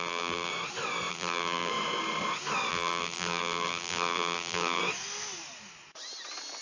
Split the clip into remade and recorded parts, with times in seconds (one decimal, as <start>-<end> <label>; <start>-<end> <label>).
0.0-0.5 remade; 0.5-1.1 recorded; 1.1-1.7 remade; 1.7-2.7 recorded; 2.7-4.8 remade; 4.8-6.6 recorded